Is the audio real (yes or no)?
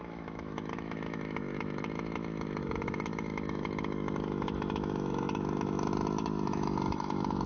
no